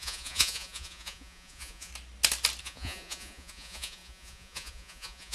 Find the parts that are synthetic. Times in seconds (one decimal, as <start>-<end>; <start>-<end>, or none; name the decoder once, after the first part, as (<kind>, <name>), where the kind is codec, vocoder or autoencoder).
0.0-1.9 (vocoder, Vocos); 2.6-5.3